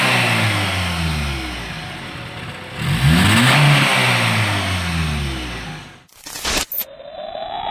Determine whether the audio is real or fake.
real